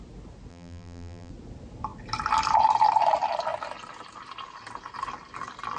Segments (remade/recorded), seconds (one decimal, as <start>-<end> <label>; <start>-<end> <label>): 0.0-0.5 recorded; 0.5-1.3 remade; 1.3-5.8 recorded